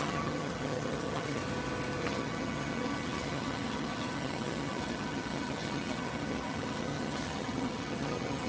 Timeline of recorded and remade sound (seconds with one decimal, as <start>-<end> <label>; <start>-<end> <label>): 0.0-1.4 remade; 1.4-2.0 recorded; 2.0-8.5 remade